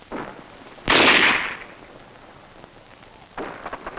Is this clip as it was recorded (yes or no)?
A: yes